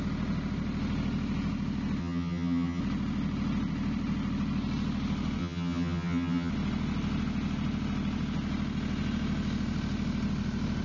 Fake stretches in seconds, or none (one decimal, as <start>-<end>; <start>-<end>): 2.0-2.8; 5.4-6.5